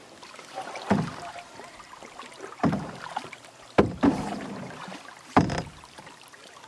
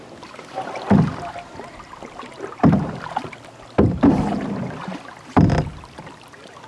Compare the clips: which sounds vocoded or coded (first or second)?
first